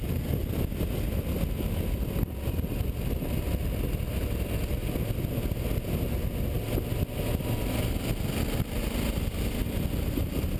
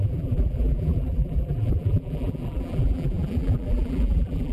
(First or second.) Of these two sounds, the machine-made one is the second